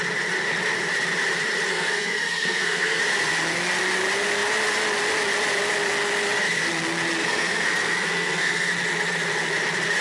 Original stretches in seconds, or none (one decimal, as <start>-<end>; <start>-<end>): 0.0-1.7; 3.0-7.2; 8.7-10.0